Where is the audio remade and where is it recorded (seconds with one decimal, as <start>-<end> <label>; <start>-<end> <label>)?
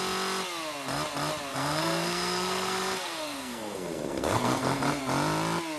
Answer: 0.0-1.5 recorded; 1.5-5.0 remade; 5.0-5.8 recorded